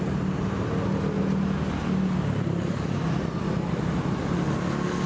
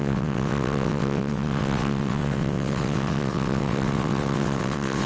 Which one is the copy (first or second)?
second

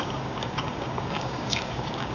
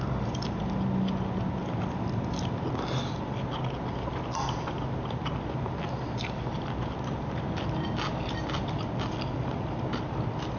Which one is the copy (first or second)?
first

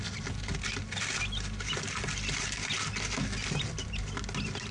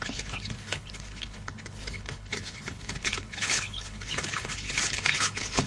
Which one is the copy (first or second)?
second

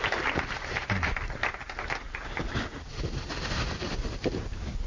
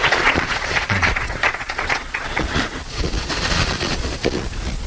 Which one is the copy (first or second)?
second